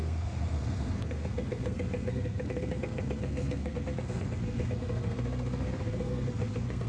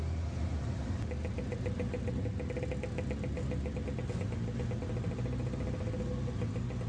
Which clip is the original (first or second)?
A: second